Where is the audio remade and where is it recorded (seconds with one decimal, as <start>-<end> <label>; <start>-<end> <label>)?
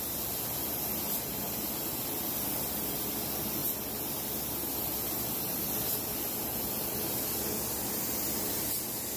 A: 0.0-9.2 recorded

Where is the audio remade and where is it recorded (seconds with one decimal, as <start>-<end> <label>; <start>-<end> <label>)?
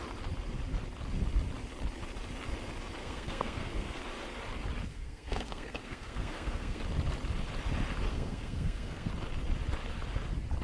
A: 0.0-3.0 recorded; 3.0-4.0 remade; 4.0-4.9 recorded; 4.9-6.8 remade; 6.8-8.1 recorded; 8.1-9.1 remade; 9.1-10.6 recorded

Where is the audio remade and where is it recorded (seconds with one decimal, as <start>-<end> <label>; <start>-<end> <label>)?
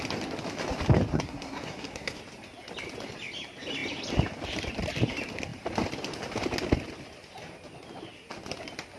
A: 0.0-1.1 recorded; 1.1-2.2 remade; 2.2-9.0 recorded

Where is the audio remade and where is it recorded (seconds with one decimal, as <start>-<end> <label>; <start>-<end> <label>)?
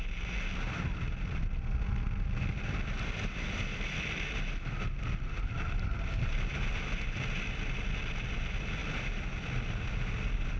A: 0.0-10.6 recorded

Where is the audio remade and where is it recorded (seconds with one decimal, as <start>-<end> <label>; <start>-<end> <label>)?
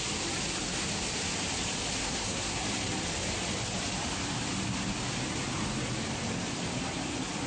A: 0.0-2.0 recorded; 2.0-2.6 remade; 2.6-7.5 recorded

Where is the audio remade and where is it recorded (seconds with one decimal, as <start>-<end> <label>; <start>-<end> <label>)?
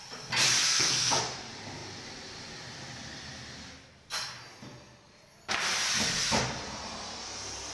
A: 0.0-0.6 recorded; 0.6-1.2 remade; 1.2-7.7 recorded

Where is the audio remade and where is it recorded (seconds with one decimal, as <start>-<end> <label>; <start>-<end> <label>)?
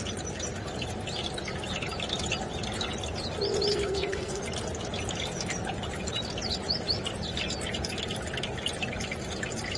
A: 0.0-3.7 recorded; 3.7-4.4 remade; 4.4-9.8 recorded